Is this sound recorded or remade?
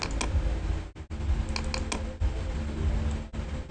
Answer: recorded